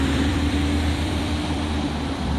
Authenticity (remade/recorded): remade